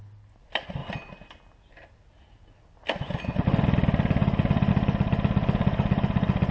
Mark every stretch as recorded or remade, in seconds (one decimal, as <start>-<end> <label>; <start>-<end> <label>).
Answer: 0.0-6.5 recorded